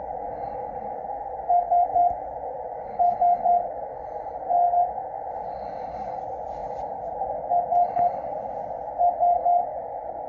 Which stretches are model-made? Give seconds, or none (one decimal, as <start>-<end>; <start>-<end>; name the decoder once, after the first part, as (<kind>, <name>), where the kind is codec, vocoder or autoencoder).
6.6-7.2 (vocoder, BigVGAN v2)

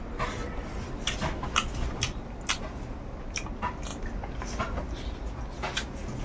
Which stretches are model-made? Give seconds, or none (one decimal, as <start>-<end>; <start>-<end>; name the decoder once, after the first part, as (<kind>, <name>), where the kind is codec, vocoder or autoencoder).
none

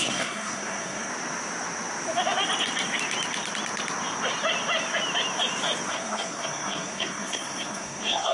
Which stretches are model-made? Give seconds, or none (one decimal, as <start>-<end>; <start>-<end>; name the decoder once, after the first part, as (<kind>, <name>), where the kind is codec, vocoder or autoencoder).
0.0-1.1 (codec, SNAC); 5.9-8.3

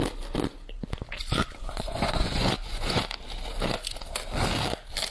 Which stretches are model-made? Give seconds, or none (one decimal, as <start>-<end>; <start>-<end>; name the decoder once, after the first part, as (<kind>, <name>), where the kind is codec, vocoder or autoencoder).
1.6-3.0 (vocoder, Vocos)

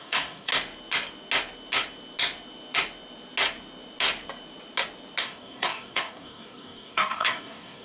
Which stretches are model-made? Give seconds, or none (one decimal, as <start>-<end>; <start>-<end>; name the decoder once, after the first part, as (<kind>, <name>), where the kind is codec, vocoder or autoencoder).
0.0-0.5 (codec, DAC); 5.2-7.8

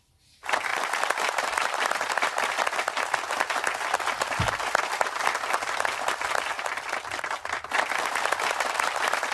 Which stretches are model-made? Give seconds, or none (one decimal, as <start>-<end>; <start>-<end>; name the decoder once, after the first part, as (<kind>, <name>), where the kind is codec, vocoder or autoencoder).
none

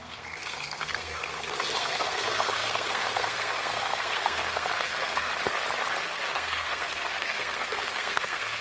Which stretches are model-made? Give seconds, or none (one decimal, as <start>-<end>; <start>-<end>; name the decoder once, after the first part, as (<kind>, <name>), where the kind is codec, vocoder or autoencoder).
0.0-5.3 (codec, SNAC); 6.0-8.6

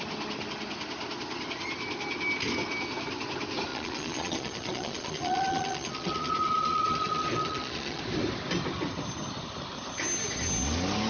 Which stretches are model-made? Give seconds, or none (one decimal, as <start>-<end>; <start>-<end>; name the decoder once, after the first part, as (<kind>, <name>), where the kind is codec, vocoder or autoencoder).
3.7-8.0 (vocoder, Vocos)